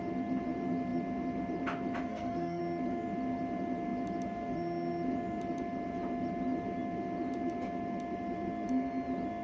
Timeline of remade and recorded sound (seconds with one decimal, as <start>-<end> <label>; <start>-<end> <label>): 0.0-2.1 recorded; 2.1-2.6 remade; 2.6-9.4 recorded